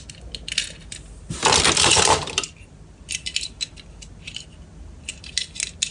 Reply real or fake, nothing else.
real